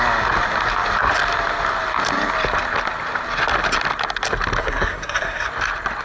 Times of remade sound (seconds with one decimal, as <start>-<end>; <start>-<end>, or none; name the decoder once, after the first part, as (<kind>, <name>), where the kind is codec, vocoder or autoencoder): 4.6-5.5 (codec, SNAC)